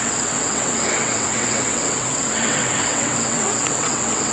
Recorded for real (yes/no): no